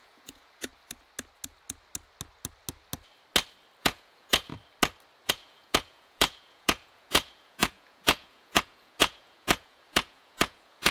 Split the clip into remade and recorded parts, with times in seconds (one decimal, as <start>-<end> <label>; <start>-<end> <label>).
0.0-0.7 remade; 0.7-3.8 recorded; 3.8-4.5 remade; 4.5-5.3 recorded; 5.3-10.9 remade